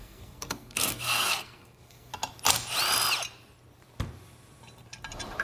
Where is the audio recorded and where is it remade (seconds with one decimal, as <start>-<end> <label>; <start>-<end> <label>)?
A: 0.0-2.1 remade; 2.1-5.4 recorded